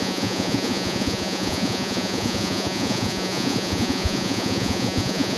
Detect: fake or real fake